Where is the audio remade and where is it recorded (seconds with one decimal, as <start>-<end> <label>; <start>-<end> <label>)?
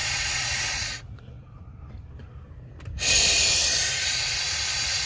0.0-1.7 remade; 1.7-4.0 recorded; 4.0-5.1 remade